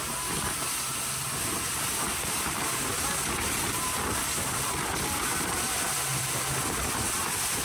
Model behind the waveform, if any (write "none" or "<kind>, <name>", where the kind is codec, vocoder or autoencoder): none